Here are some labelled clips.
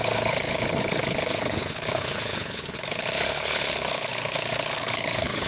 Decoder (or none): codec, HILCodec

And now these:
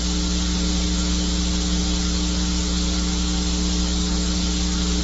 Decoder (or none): none